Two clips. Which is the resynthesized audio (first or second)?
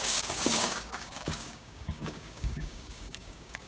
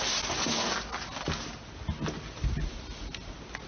first